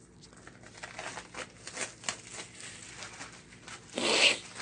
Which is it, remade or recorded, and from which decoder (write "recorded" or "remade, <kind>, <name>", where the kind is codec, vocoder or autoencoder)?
recorded